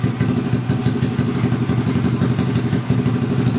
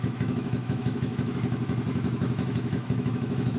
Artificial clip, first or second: second